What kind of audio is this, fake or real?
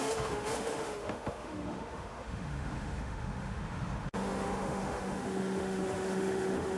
fake